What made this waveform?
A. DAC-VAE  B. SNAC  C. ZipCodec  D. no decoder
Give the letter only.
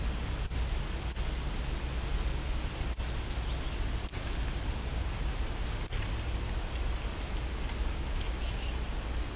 D